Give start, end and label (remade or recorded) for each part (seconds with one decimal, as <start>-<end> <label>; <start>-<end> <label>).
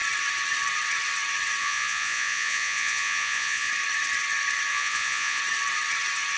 0.0-1.6 recorded; 1.6-3.7 remade; 3.7-4.7 recorded; 4.7-5.4 remade; 5.4-6.4 recorded